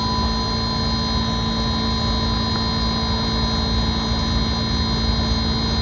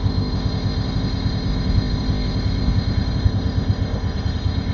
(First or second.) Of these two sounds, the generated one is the second